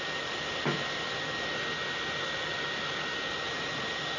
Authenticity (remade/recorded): recorded